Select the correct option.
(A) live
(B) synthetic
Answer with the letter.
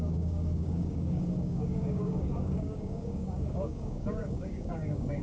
B